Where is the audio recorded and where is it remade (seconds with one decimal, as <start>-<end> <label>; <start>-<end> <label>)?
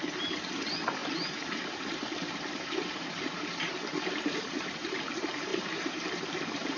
0.0-1.0 recorded; 1.0-5.1 remade; 5.1-5.5 recorded; 5.5-6.8 remade